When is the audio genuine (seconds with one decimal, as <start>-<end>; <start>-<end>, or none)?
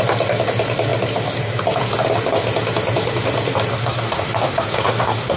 0.0-3.7